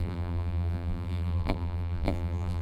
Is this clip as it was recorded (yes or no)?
no